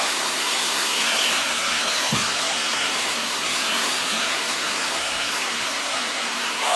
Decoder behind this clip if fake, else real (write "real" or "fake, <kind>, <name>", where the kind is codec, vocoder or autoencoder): fake, codec, SNAC